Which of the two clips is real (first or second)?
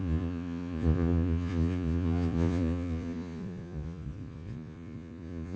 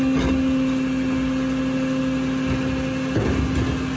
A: second